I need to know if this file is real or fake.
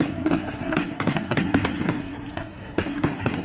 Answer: fake